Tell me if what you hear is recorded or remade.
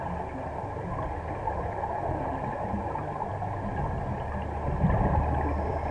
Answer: recorded